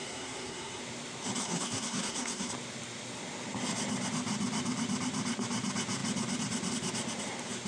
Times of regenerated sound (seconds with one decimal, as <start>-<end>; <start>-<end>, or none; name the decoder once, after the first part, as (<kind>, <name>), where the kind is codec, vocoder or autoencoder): 0.0-0.8 (codec, SNAC); 1.4-2.5

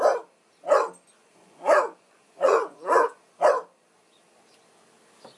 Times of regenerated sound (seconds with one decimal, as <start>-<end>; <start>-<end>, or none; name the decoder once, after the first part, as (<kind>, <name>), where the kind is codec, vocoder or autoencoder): 1.2-3.2 (vocoder, Vocos)

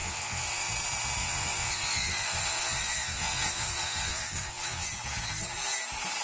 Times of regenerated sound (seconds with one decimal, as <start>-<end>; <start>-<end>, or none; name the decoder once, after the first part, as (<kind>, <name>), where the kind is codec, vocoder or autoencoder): 0.0-0.7 (vocoder, WaveNeXt); 1.2-4.9

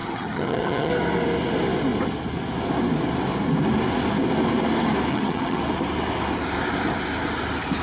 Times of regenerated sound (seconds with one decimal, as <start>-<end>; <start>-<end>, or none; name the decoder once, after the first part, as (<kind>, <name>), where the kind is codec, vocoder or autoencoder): 0.0-0.9 (vocoder, HiFi-GAN); 5.1-5.6

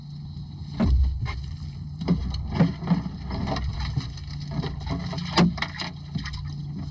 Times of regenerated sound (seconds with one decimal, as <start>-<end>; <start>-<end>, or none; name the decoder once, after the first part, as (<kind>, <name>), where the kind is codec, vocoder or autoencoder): 0.6-2.2 (vocoder, BigVGAN v2)